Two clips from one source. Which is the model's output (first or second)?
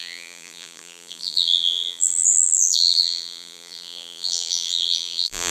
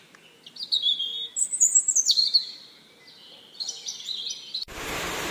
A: first